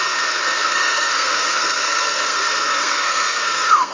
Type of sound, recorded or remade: remade